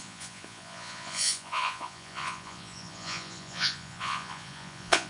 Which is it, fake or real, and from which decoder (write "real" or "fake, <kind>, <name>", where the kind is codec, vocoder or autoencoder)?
fake, vocoder, Vocos